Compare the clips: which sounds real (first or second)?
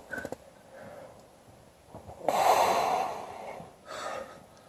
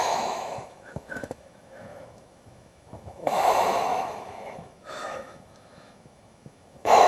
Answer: first